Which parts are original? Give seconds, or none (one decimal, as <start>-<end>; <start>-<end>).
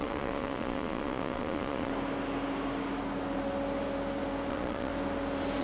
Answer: 1.9-4.5; 4.9-5.6